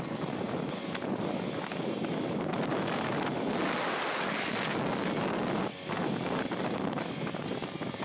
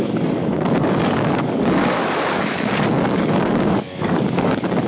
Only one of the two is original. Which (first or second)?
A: first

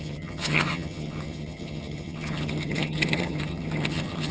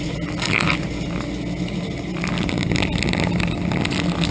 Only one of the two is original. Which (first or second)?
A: second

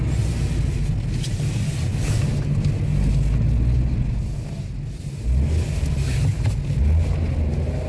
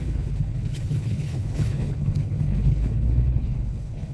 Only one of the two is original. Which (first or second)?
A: first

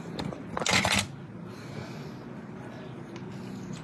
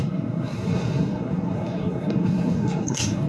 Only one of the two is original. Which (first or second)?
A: first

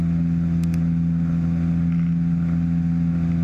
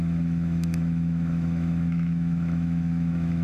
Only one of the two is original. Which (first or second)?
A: first